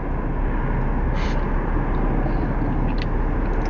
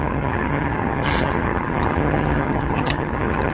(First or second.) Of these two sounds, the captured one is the first